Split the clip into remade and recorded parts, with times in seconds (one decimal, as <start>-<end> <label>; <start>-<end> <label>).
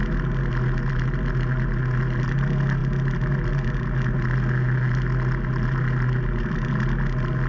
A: 0.0-7.5 recorded